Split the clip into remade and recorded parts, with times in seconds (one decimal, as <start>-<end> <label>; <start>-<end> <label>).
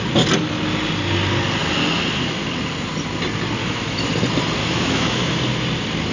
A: 0.0-3.6 recorded; 3.6-4.1 remade; 4.1-4.6 recorded; 4.6-5.3 remade; 5.3-6.1 recorded